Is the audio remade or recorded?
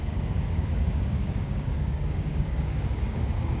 remade